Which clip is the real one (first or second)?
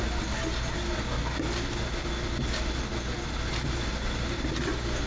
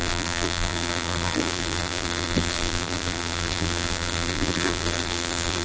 first